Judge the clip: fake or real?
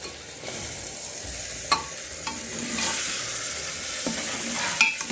real